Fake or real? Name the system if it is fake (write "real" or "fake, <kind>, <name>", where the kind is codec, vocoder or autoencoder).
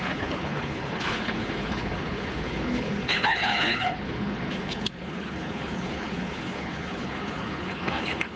fake, codec, HILCodec